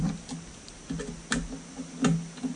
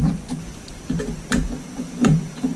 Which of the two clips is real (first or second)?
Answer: first